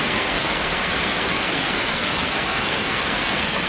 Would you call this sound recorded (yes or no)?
no